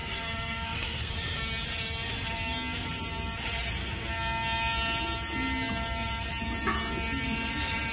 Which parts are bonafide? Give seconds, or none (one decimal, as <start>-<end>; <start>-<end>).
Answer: 1.1-7.9